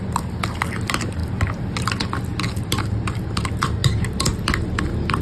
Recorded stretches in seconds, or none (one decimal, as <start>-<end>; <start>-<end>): 0.0-5.2